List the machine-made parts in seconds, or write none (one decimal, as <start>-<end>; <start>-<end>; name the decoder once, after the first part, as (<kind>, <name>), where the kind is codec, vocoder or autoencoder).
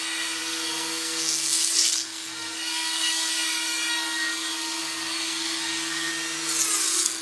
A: 0.0-6.1 (codec, SNAC); 6.8-7.2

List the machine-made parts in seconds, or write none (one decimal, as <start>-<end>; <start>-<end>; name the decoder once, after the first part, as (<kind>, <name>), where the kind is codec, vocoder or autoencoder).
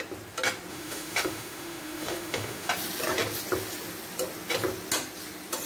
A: 0.7-2.7 (autoencoder, DAC-VAE)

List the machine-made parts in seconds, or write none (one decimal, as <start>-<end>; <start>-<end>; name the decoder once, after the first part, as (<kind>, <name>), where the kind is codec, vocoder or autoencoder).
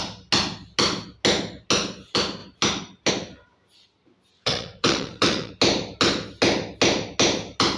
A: 4.3-5.5 (vocoder, WaveNeXt)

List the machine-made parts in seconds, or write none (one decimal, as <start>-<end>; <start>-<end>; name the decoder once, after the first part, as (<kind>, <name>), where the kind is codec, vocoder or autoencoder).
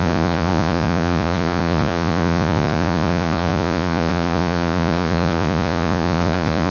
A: 0.0-6.7 (vocoder, Vocos)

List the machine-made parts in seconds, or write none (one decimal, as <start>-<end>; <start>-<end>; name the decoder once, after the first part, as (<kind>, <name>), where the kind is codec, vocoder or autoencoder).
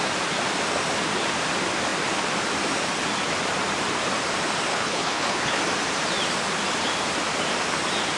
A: 4.7-5.6 (codec, HILCodec)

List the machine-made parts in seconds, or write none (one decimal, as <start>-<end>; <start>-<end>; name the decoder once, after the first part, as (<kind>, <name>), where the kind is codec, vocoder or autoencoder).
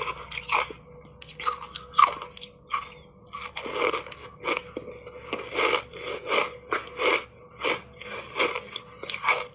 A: none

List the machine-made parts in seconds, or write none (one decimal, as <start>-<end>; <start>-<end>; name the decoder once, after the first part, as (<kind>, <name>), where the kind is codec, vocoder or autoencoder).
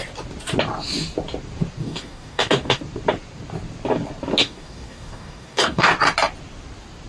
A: 1.8-2.8 (codec, DAC); 4.4-5.9